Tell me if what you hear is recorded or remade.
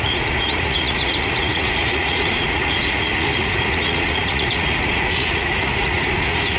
remade